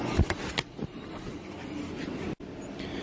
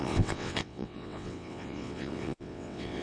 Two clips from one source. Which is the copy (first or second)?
second